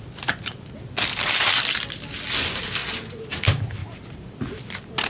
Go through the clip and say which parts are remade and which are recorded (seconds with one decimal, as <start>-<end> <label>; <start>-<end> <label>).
0.0-2.8 recorded; 2.8-3.4 remade; 3.4-3.8 recorded; 3.8-4.6 remade; 4.6-5.1 recorded